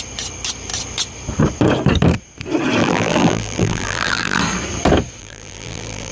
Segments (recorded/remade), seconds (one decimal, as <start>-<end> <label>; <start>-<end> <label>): 0.0-2.8 recorded; 2.8-4.4 remade; 4.4-5.2 recorded; 5.2-6.1 remade